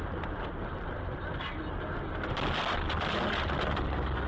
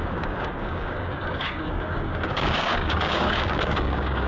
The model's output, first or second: second